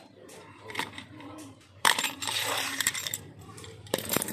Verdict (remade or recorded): remade